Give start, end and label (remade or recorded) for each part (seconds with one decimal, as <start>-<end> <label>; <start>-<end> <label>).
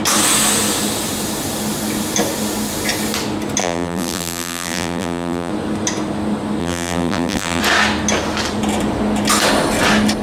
0.0-3.6 recorded; 3.6-5.5 remade; 5.5-6.6 recorded; 6.6-7.6 remade; 7.6-10.2 recorded